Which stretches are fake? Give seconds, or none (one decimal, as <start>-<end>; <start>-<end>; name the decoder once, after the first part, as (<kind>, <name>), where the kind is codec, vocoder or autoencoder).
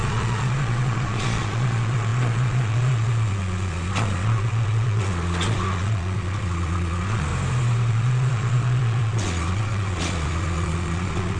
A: 0.0-7.3 (vocoder, Vocos); 7.9-11.4